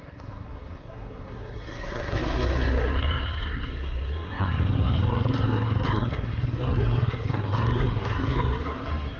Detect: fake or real fake